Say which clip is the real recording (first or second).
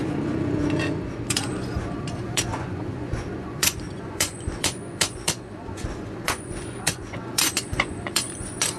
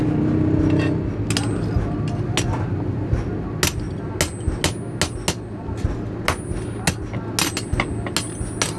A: second